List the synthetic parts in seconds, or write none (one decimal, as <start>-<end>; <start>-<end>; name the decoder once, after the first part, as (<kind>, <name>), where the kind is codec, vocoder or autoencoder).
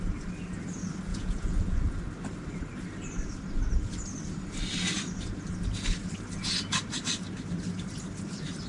1.1-2.0 (vocoder, Vocos)